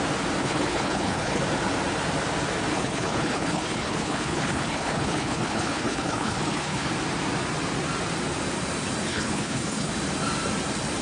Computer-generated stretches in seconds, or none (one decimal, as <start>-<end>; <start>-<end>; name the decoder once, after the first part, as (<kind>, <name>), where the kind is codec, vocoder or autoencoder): 0.4-1.4 (codec, HILCodec); 2.7-6.9; 9.1-9.9